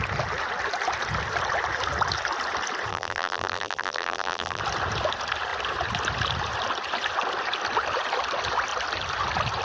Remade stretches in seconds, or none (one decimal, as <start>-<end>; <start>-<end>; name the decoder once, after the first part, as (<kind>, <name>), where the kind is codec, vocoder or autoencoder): 2.9-4.6 (vocoder, BigVGAN v2)